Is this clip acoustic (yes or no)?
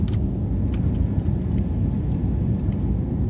yes